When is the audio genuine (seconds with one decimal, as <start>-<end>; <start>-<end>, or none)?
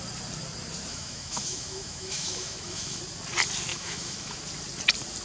0.0-0.9; 3.0-3.7; 4.4-5.2